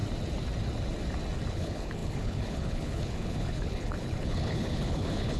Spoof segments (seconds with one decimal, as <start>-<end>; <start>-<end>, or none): 1.5-5.4